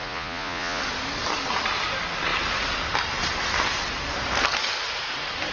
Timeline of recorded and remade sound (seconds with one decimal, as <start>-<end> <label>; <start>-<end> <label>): 0.0-0.8 remade; 0.8-5.5 recorded